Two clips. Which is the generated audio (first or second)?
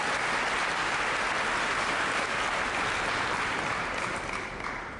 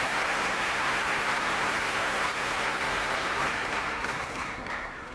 second